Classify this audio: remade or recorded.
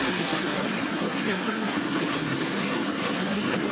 remade